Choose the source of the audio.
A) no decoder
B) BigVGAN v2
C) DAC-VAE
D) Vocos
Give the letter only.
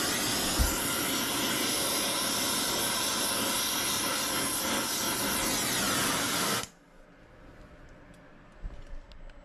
A